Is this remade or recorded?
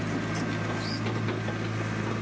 recorded